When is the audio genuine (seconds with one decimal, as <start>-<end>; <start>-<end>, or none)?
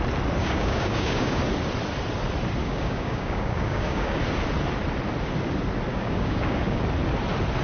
0.0-0.4; 1.4-2.6; 4.2-5.9; 6.8-7.6